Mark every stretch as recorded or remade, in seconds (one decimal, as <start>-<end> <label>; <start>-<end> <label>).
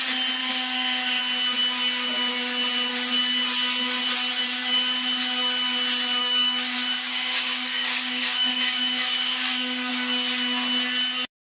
0.0-0.4 recorded; 0.4-1.2 remade; 1.2-6.2 recorded; 6.2-9.9 remade; 9.9-11.6 recorded